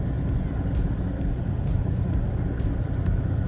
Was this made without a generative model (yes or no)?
yes